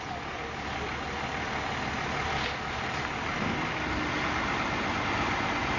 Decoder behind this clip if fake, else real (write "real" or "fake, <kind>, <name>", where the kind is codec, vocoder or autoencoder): real